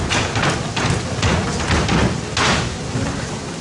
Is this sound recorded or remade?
recorded